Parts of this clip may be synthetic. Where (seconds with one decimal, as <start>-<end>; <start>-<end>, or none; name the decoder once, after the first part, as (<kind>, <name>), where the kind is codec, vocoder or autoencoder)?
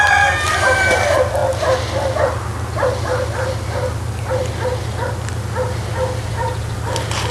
none